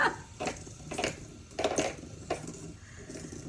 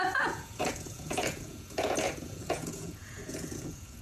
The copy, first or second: second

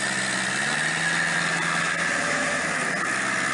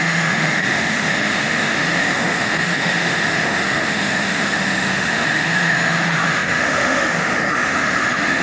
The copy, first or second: second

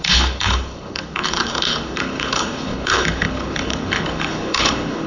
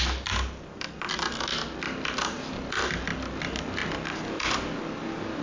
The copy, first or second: first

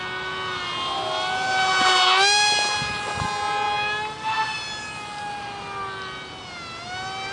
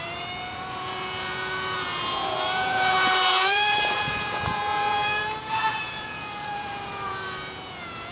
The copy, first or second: second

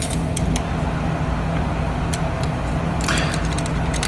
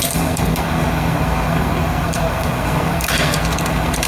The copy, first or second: second